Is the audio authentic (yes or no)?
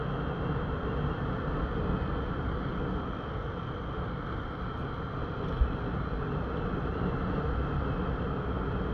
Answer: yes